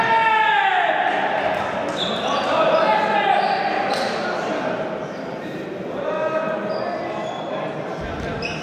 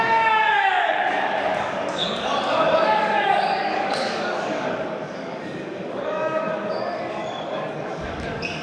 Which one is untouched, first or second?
first